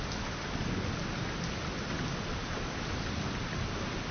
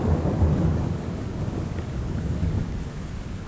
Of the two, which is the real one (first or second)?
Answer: first